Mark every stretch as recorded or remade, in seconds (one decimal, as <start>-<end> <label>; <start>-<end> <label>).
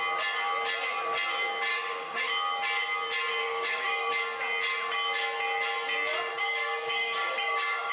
0.0-1.7 recorded; 1.7-2.3 remade; 2.3-3.4 recorded; 3.4-4.1 remade; 4.1-6.3 recorded; 6.3-7.9 remade